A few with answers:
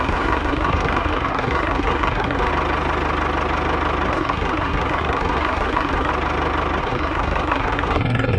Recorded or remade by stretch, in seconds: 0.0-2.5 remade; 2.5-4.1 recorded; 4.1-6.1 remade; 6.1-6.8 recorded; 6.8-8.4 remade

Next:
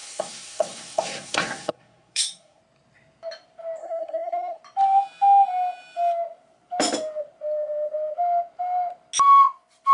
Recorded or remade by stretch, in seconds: 0.0-2.6 remade; 2.6-3.8 recorded; 3.8-4.6 remade; 4.6-9.9 recorded

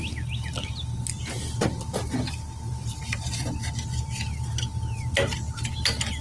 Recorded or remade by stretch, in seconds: 0.0-6.2 recorded

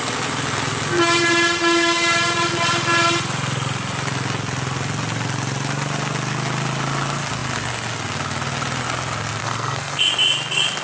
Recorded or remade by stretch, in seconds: 0.0-9.4 recorded; 9.4-10.0 remade; 10.0-10.8 recorded

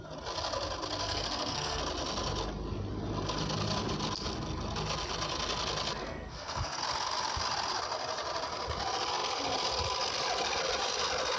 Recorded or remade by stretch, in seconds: 0.0-1.0 recorded; 1.0-1.8 remade; 1.8-6.0 recorded; 6.0-6.8 remade; 6.8-11.4 recorded

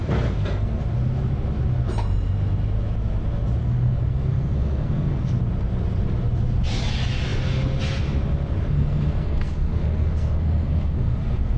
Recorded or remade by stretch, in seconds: 0.0-0.8 remade; 0.8-3.6 recorded; 3.6-5.4 remade; 5.4-8.6 recorded; 8.6-11.6 remade

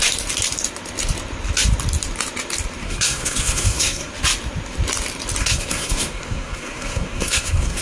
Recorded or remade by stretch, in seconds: 0.0-2.8 recorded; 2.8-4.1 remade; 4.1-5.4 recorded; 5.4-7.8 remade